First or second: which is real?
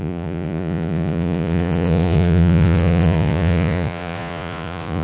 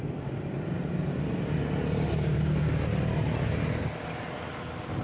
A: second